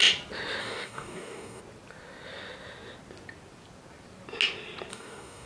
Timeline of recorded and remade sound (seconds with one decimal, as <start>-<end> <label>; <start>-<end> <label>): 0.0-0.6 recorded; 0.6-1.6 remade; 1.6-4.9 recorded; 4.9-5.5 remade